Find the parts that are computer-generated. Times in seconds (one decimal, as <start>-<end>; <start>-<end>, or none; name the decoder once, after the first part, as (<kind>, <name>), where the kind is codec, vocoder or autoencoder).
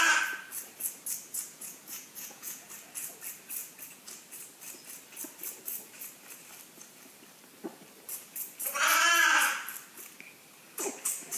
1.4-2.7 (vocoder, Vocos)